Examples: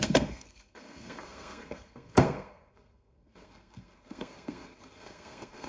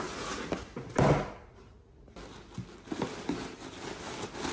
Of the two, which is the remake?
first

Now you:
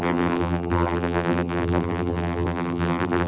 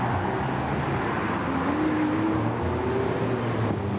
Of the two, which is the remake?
first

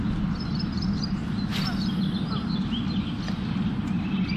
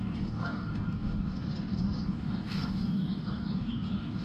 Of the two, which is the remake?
second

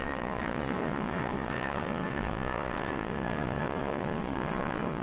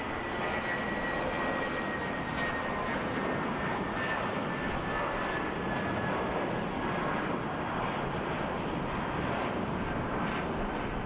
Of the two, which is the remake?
first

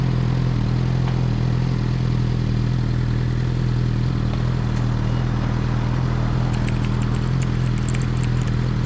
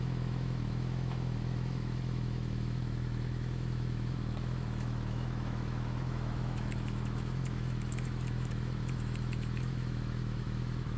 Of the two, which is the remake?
second